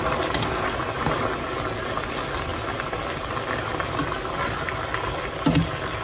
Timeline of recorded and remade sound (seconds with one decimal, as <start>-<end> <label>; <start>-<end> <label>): 0.0-6.0 recorded